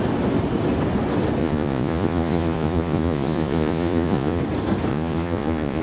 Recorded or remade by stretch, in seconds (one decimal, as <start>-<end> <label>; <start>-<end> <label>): 0.0-1.4 recorded; 1.4-4.4 remade; 4.4-4.9 recorded; 4.9-5.8 remade